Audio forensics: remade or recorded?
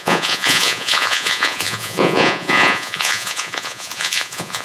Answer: remade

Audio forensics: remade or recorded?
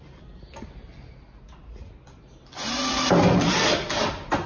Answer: recorded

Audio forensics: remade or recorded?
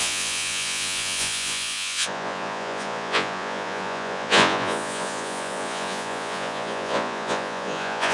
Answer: remade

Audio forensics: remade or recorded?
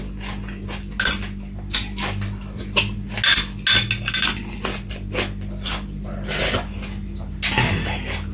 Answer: recorded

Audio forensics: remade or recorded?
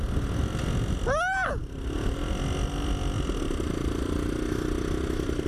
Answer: recorded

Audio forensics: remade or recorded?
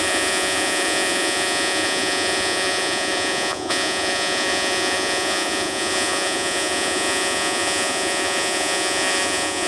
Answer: remade